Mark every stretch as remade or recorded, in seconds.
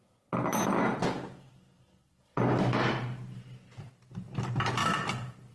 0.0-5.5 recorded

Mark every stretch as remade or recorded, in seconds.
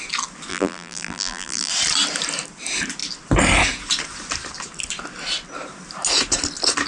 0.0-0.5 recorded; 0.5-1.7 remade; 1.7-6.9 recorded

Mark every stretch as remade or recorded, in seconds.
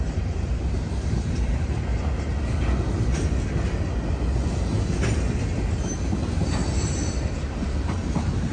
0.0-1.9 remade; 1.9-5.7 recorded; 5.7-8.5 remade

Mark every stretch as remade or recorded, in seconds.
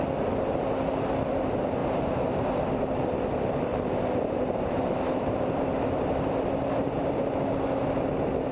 0.0-1.8 recorded; 1.8-2.6 remade; 2.6-3.7 recorded; 3.7-5.8 remade; 5.8-6.8 recorded; 6.8-7.4 remade; 7.4-8.5 recorded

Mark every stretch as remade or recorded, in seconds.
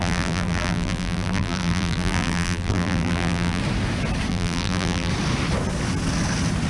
0.0-3.6 remade; 3.6-4.3 recorded; 4.3-5.1 remade; 5.1-6.7 recorded